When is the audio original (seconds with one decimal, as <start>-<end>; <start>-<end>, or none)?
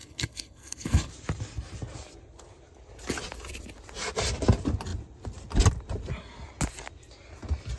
1.1-7.8